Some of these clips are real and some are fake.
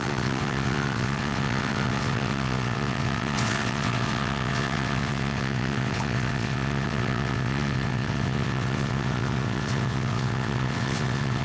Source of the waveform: fake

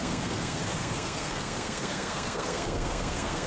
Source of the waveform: fake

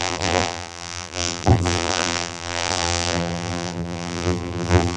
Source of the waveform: fake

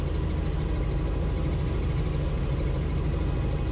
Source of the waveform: real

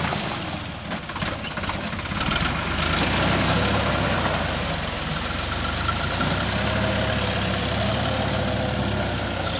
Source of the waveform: real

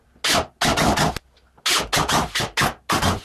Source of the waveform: real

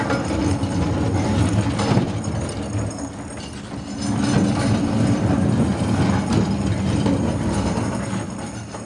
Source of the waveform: real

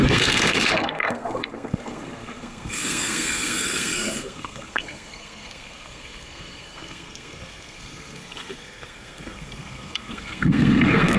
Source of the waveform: fake